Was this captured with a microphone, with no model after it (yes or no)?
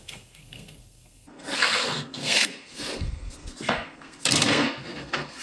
no